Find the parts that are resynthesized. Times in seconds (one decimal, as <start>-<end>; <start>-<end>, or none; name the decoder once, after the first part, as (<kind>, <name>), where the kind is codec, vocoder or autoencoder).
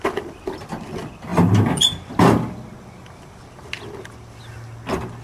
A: none